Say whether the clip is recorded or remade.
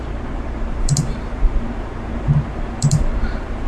remade